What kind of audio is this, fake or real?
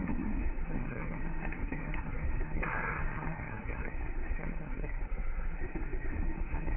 fake